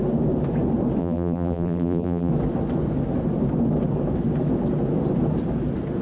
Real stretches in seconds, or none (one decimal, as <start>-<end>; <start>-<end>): 0.0-1.0; 2.3-6.0